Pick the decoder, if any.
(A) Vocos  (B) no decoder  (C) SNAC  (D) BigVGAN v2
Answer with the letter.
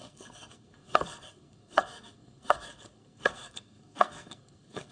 C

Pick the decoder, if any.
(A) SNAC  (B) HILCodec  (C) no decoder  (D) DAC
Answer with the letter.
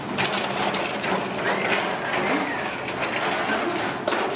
C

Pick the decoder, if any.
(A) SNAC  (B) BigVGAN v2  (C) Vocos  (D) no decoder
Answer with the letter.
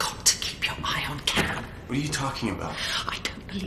D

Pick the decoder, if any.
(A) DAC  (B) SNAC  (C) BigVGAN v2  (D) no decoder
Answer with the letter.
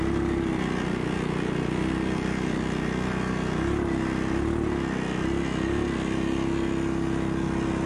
D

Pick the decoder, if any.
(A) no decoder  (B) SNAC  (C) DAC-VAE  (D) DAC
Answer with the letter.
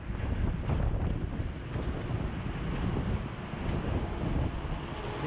A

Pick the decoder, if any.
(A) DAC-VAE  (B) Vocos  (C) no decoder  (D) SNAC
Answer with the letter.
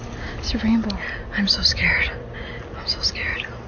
C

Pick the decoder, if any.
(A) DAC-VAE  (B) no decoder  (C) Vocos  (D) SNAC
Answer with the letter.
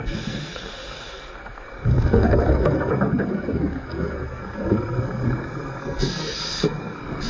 D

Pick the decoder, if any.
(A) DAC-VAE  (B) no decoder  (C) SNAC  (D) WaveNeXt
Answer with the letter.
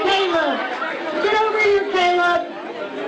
B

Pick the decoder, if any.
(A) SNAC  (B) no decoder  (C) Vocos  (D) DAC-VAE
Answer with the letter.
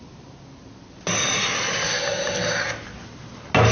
B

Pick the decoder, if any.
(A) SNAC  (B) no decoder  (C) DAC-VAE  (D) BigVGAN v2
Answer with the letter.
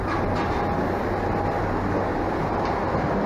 B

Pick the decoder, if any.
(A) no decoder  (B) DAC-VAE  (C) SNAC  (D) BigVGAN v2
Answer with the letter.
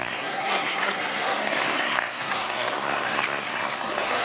C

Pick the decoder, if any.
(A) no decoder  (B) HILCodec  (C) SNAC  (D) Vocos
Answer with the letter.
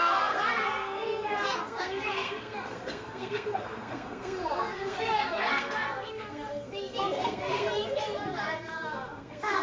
C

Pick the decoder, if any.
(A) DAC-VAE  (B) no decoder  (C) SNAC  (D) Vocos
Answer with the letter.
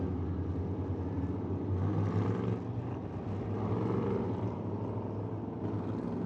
B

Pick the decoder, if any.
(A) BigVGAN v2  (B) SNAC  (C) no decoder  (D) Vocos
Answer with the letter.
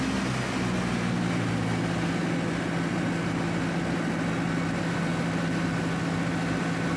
C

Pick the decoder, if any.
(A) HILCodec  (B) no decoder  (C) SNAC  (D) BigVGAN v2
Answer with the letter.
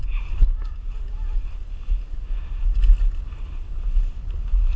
B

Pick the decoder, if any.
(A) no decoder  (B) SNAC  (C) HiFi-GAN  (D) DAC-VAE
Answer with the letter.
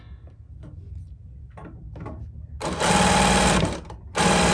A